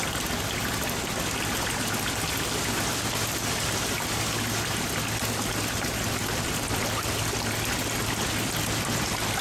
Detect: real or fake real